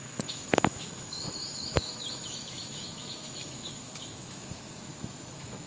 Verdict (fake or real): fake